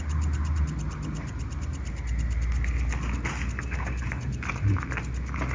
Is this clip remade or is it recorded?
recorded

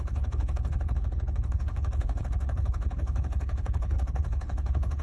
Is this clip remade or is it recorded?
remade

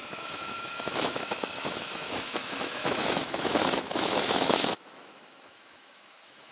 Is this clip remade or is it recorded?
remade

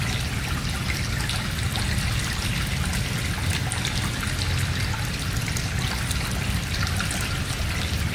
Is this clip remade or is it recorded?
recorded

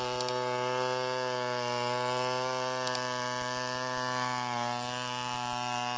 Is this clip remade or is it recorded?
recorded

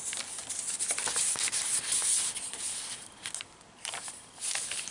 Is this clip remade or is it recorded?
recorded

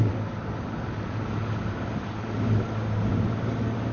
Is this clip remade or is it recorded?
recorded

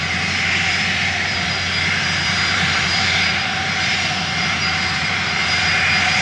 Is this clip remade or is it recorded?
remade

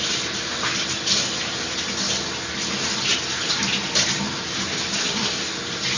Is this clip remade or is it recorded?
recorded